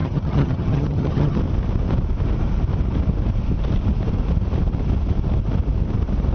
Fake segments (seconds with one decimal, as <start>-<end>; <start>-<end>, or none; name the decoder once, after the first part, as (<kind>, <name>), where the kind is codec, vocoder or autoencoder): 0.0-1.4 (vocoder, HiFi-GAN)